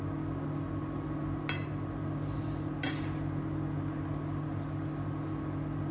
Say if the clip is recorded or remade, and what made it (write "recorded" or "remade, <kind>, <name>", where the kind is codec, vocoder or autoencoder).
recorded